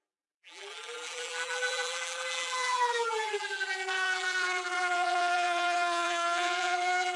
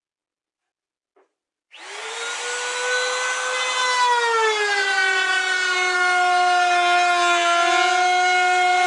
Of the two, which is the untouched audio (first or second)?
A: second